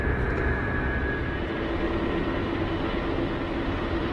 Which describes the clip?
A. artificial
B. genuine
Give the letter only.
B